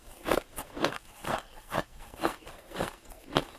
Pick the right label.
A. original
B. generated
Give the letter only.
B